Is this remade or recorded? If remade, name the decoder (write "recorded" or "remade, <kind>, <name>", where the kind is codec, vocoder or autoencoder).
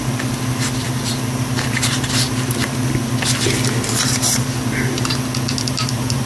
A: recorded